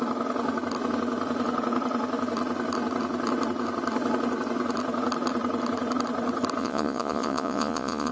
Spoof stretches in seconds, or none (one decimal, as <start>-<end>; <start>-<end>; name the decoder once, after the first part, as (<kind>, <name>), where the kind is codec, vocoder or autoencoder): 6.6-8.1 (vocoder, Vocos)